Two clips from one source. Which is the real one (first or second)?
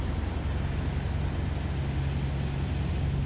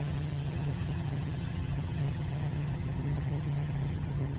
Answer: first